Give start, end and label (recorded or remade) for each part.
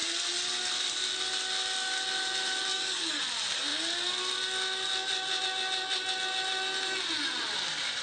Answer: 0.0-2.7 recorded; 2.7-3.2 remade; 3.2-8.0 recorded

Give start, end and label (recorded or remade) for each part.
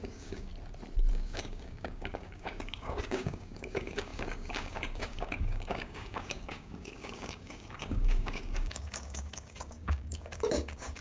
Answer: 0.0-0.5 remade; 0.5-1.1 recorded; 1.1-11.0 remade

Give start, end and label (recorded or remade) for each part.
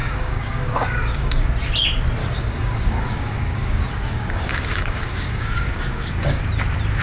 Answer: 0.0-1.5 remade; 1.5-2.2 recorded; 2.2-6.4 remade; 6.4-7.0 recorded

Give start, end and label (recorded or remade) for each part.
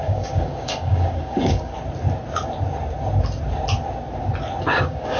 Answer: 0.0-1.7 remade; 1.7-4.8 recorded; 4.8-5.2 remade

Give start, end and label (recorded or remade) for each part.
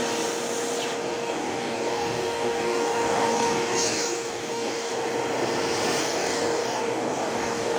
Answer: 0.0-1.1 recorded; 1.1-4.9 remade; 4.9-6.0 recorded; 6.0-7.8 remade